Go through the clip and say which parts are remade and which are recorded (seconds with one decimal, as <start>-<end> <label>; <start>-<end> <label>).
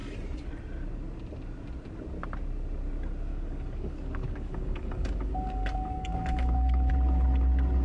0.0-3.3 recorded; 3.3-6.9 remade; 6.9-7.8 recorded